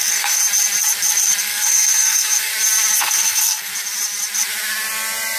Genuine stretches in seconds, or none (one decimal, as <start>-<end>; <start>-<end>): 0.4-1.4; 2.5-3.0; 3.7-5.4